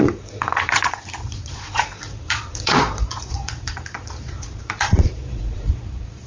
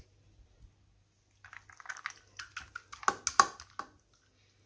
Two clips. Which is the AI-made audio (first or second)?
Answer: first